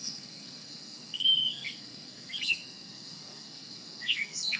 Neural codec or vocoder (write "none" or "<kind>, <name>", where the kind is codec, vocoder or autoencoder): codec, SNAC